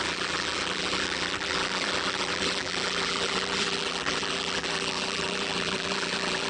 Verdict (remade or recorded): remade